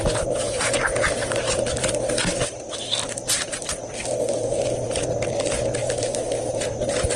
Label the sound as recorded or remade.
recorded